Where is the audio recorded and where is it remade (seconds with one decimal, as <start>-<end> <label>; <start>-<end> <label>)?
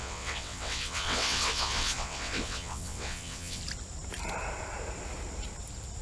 0.0-3.6 remade; 3.6-6.0 recorded